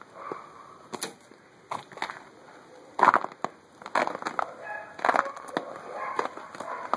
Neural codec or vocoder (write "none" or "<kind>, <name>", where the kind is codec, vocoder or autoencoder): none